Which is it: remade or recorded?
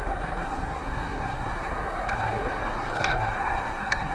remade